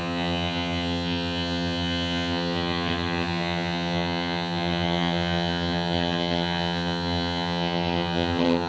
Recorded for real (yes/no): no